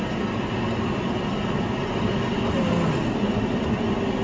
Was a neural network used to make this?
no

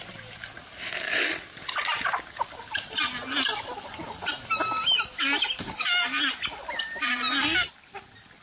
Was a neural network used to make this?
no